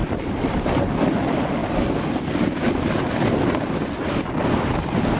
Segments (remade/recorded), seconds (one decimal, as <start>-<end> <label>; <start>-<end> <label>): 0.0-0.9 remade; 0.9-1.6 recorded; 1.6-4.7 remade; 4.7-5.2 recorded